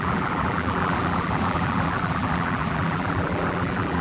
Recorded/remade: remade